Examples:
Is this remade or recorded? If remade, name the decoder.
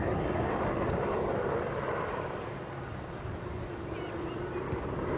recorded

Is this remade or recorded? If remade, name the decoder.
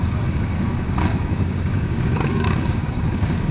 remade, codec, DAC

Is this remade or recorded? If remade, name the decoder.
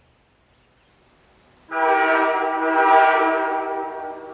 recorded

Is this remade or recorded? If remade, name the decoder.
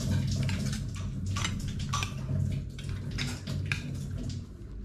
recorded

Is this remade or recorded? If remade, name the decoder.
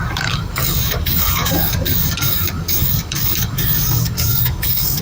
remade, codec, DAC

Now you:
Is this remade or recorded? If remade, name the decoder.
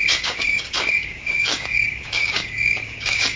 remade, codec, DAC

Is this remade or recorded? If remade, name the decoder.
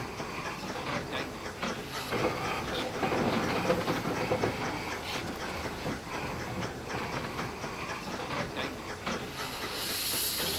recorded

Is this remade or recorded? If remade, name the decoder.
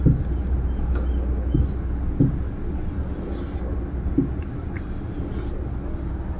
recorded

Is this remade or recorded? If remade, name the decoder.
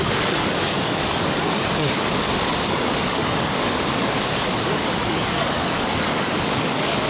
remade, codec, DAC